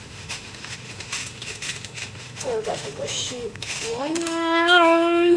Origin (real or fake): fake